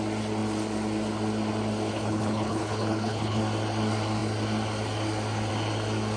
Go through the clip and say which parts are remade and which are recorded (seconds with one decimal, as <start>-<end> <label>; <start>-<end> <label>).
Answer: 0.0-1.9 recorded; 1.9-3.4 remade; 3.4-6.2 recorded